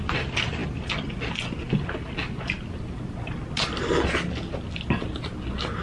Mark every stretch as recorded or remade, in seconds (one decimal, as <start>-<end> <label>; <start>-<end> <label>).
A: 0.0-5.8 recorded